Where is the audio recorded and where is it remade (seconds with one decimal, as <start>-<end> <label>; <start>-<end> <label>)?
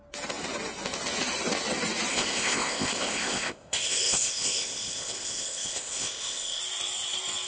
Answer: 0.0-2.1 recorded; 2.1-6.6 remade; 6.6-7.5 recorded